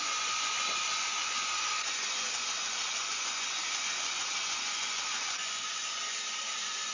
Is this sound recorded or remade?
remade